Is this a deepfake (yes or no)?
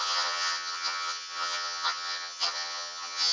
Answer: yes